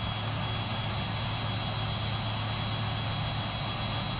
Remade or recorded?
recorded